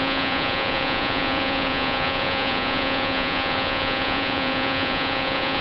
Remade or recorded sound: remade